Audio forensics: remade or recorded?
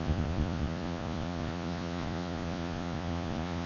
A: remade